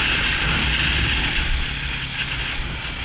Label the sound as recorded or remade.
recorded